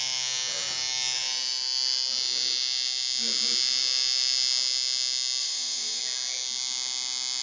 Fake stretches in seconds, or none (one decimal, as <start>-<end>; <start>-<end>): 5.4-6.0